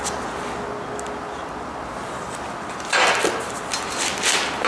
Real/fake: real